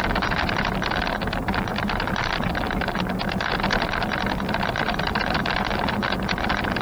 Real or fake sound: real